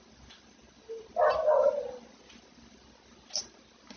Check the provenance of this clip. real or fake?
real